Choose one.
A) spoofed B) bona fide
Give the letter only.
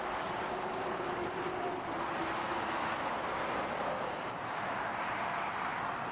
B